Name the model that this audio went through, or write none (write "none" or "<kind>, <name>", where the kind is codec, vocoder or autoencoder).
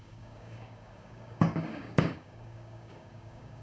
codec, DAC